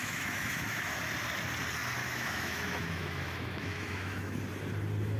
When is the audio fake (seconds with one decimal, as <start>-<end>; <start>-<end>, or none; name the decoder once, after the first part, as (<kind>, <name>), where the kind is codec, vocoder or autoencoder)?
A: 0.0-1.0 (autoencoder, DAC-VAE); 2.0-4.4

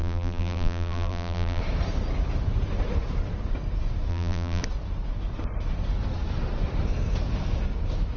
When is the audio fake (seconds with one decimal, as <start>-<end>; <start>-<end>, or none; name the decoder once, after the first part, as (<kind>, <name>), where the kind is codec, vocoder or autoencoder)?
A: 0.0-1.6 (vocoder, BigVGAN v2); 4.1-4.6